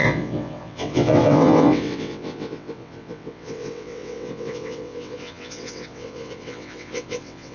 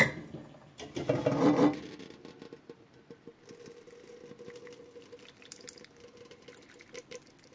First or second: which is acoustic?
second